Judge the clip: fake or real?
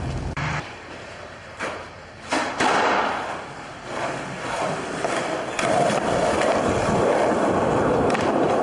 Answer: fake